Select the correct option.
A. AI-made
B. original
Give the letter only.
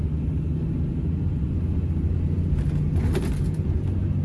B